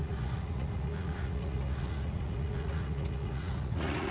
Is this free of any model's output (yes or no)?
no